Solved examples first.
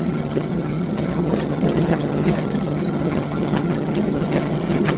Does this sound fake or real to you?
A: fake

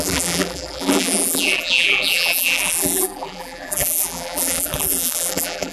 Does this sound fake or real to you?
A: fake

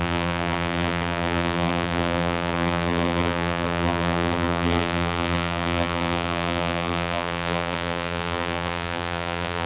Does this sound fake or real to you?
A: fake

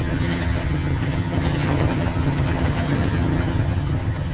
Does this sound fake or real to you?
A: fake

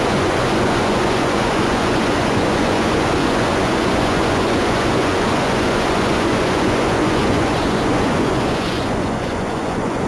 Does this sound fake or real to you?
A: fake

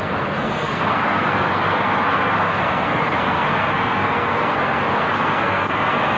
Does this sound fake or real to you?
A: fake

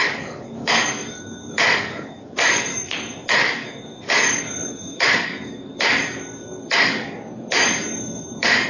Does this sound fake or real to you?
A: fake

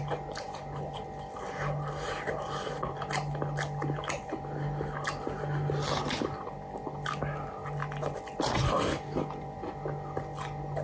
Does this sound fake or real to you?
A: real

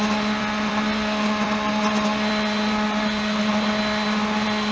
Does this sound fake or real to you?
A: real